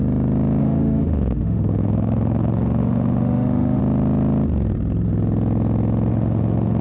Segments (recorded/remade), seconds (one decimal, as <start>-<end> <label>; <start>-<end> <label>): 0.0-0.6 recorded; 0.6-3.8 remade; 3.8-6.1 recorded; 6.1-6.8 remade